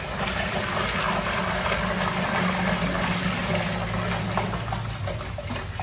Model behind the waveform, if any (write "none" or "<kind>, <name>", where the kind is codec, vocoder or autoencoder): none